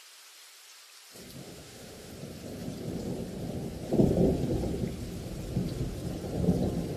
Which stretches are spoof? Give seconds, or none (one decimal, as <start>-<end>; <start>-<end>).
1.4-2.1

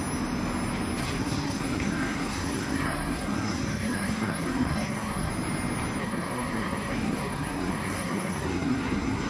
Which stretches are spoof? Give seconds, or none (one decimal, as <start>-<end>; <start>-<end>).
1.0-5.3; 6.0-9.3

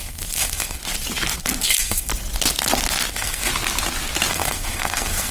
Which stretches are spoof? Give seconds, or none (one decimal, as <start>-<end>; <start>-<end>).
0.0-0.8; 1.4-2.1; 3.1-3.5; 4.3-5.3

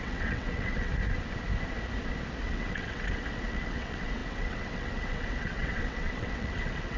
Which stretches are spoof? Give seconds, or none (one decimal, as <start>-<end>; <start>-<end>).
0.0-0.9; 2.4-7.0

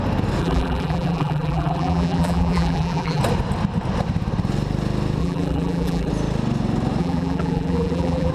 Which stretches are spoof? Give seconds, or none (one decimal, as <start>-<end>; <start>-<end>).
0.4-3.2; 5.2-6.1; 7.0-8.3

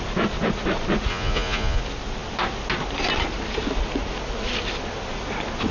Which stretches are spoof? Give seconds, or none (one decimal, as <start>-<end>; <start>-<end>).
1.1-1.8

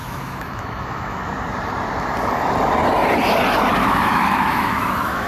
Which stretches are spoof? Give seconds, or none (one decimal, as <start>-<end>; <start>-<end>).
0.0-1.3; 3.8-5.3

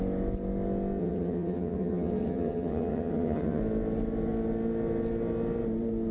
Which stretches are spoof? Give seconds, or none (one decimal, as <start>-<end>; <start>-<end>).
1.0-3.6